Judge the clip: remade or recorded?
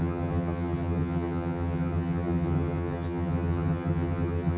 remade